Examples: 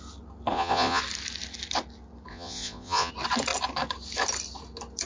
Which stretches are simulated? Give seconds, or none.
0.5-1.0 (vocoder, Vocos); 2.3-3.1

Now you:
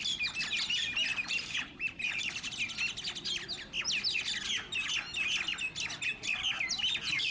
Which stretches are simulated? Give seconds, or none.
1.1-2.3 (vocoder, BigVGAN v2)

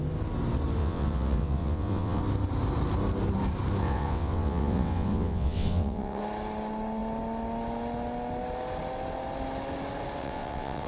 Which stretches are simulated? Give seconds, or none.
0.8-2.2 (vocoder, WaveNeXt); 3.8-6.2; 10.2-10.9

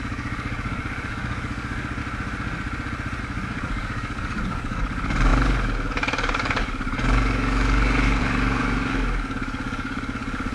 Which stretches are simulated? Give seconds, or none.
0.0-2.0 (codec, DAC); 3.2-10.5

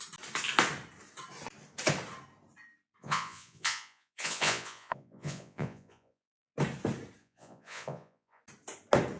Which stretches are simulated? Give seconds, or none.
3.0-6.3 (vocoder, Vocos); 7.2-8.4

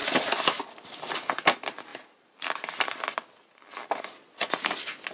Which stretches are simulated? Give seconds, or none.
none

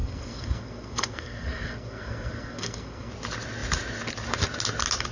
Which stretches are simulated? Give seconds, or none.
0.0-3.1 (codec, SNAC)